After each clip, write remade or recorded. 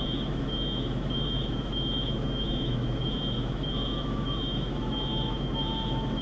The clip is remade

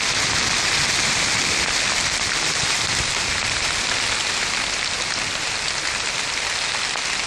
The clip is recorded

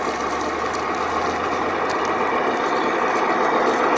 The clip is recorded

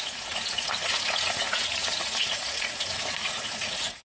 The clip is remade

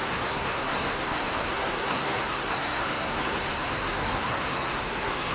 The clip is remade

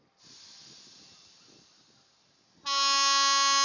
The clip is recorded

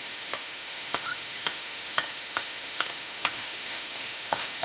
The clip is remade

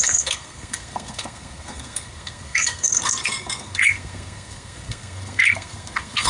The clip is remade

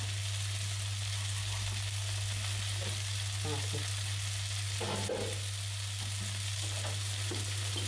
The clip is recorded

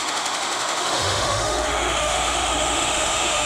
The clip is remade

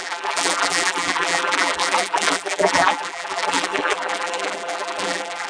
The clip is remade